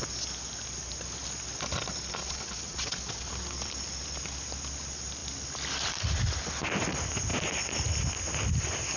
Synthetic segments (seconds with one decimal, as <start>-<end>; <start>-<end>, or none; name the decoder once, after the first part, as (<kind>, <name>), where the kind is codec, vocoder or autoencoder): 2.2-3.3 (vocoder, WaveNeXt)